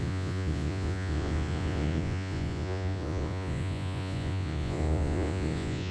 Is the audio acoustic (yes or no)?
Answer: no